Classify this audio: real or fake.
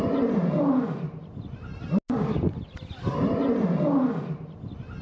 real